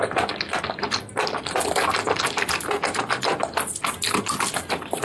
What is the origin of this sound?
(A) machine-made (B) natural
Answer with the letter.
B